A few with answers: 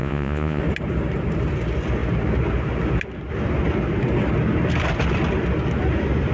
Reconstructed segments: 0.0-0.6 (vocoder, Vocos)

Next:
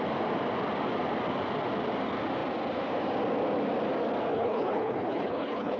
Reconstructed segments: 4.3-5.8 (codec, HILCodec)

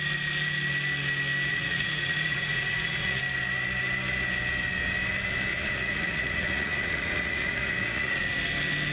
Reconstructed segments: 1.5-3.2 (vocoder, Vocos); 5.5-8.2

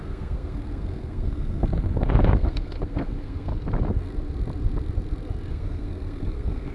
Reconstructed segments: 0.0-3.5 (codec, SNAC); 5.5-6.7

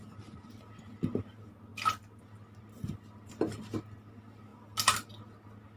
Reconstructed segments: none

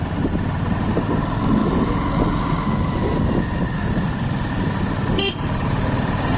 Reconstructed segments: none

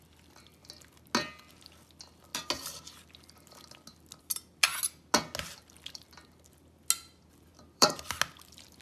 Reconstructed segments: 7.5-8.0 (vocoder, BigVGAN v2)